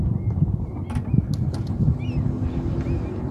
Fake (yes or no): no